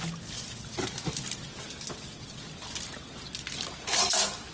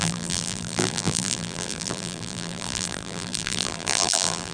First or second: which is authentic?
first